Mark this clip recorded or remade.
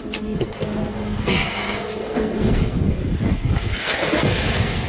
remade